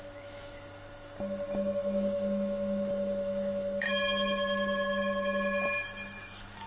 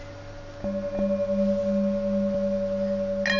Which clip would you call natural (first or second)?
second